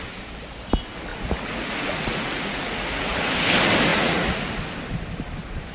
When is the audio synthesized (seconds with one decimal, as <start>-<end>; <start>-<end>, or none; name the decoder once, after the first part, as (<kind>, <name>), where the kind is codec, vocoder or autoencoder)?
1.1-3.3 (vocoder, Vocos); 3.9-4.6